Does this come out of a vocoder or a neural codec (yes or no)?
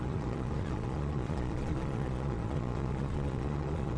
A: yes